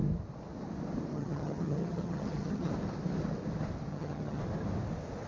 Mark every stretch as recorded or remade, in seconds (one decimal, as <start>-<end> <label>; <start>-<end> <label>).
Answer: 0.0-1.1 recorded; 1.1-2.7 remade; 2.7-3.9 recorded; 3.9-4.4 remade; 4.4-5.3 recorded